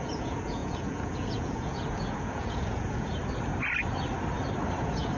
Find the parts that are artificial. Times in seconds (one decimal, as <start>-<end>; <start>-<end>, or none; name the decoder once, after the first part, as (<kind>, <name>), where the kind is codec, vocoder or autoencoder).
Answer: 0.0-3.2 (vocoder, Vocos); 4.8-5.2